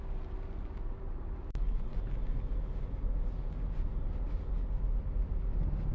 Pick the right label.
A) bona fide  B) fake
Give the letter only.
A